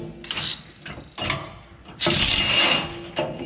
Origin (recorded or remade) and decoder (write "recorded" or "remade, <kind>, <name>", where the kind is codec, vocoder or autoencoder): recorded